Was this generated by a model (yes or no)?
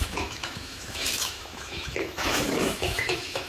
yes